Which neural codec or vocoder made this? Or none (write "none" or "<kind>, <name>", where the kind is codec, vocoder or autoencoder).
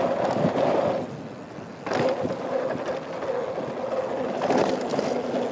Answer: none